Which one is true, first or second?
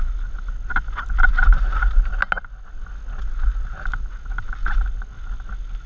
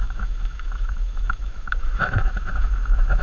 first